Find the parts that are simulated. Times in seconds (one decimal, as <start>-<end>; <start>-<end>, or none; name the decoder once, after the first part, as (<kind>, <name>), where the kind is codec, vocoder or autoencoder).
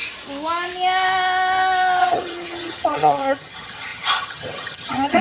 2.0-5.2 (vocoder, HiFi-GAN)